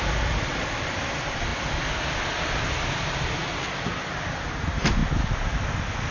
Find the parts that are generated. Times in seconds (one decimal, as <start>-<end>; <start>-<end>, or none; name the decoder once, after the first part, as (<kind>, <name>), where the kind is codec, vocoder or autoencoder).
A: none